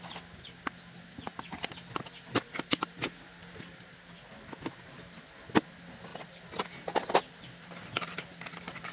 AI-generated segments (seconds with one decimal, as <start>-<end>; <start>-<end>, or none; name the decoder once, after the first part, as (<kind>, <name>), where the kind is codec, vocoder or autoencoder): none